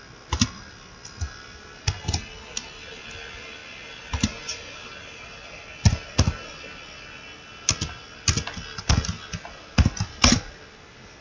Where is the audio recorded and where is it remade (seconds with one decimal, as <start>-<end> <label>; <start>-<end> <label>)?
0.0-11.2 recorded